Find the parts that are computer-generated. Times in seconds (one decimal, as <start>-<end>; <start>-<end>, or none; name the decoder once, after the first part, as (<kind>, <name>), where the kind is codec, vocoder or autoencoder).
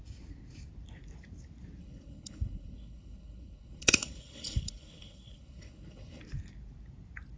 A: 1.8-6.2 (codec, HILCodec)